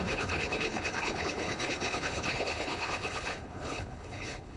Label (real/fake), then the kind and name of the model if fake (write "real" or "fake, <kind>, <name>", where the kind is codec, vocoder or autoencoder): fake, codec, HILCodec